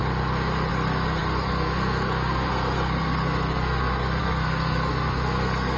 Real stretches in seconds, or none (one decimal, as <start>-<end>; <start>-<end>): 0.0-0.7